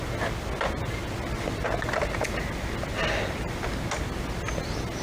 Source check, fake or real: real